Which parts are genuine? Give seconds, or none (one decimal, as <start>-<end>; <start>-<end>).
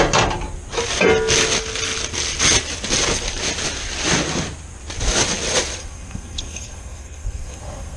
0.0-5.8